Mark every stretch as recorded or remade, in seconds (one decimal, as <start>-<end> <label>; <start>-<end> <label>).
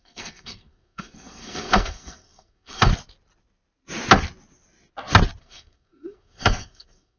0.0-2.9 remade; 2.9-5.4 recorded; 5.4-7.2 remade